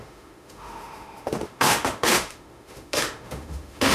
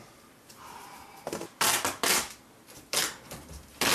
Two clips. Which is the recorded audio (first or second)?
second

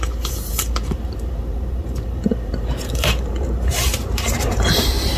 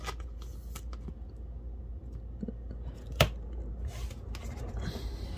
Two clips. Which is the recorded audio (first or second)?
second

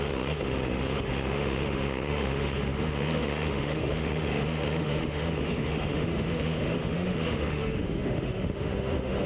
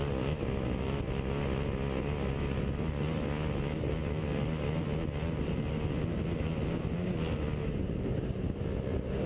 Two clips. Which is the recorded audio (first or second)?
second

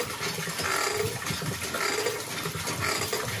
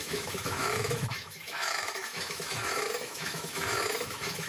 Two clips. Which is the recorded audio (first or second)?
first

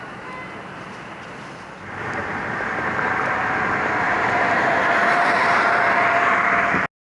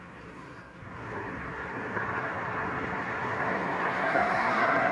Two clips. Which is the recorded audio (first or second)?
first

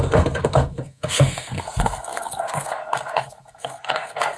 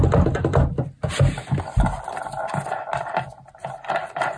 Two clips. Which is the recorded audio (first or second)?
second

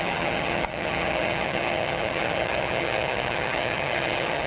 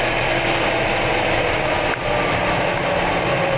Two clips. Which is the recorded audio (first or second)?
second